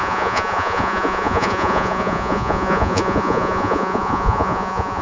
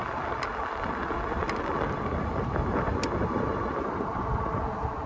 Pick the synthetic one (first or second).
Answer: first